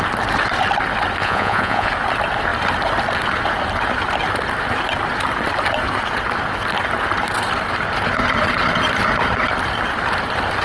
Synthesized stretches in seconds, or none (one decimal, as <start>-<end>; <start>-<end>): 1.2-1.9